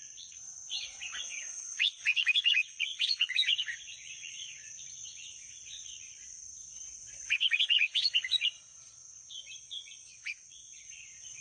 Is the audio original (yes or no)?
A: no